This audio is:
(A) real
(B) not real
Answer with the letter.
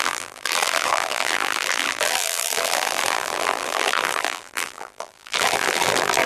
B